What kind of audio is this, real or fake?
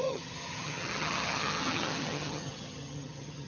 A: fake